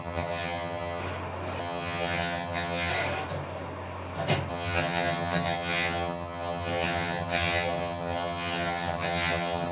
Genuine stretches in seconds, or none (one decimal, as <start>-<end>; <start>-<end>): 1.0-1.6; 2.9-4.5